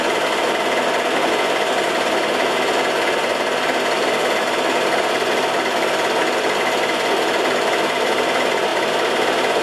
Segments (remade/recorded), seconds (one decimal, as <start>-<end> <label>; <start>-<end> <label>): 0.0-9.6 recorded